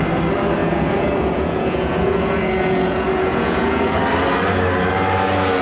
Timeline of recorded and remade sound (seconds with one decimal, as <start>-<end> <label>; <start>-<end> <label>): 0.0-0.6 recorded; 0.6-4.0 remade; 4.0-5.6 recorded